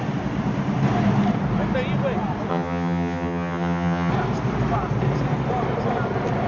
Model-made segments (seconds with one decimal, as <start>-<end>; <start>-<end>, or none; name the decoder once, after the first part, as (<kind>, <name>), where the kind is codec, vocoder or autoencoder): 2.5-4.1 (vocoder, HiFi-GAN)